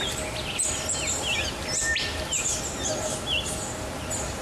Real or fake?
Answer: real